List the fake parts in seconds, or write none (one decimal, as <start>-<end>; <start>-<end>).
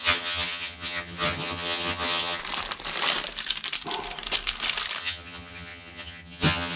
0.0-2.4; 5.0-6.8